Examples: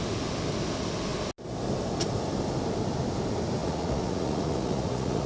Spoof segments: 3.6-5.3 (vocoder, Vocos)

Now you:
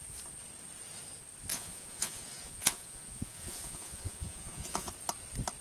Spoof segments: 1.5-4.9 (vocoder, Vocos)